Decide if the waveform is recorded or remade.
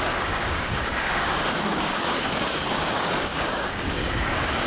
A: remade